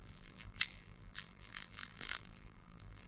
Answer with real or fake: fake